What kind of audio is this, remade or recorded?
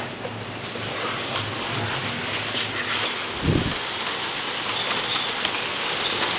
recorded